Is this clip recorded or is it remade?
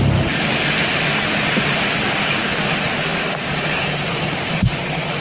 recorded